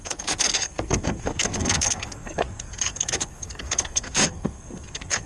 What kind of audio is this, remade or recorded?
remade